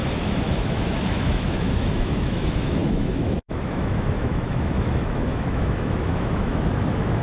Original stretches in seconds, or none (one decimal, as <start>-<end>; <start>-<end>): none